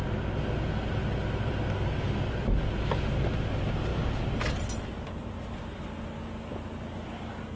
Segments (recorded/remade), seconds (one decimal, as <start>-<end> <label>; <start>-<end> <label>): 0.0-7.6 recorded